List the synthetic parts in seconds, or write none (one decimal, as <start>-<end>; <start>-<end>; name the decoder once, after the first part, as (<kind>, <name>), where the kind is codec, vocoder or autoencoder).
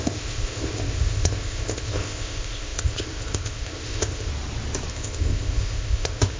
0.0-4.3 (codec, ZipCodec); 4.9-6.4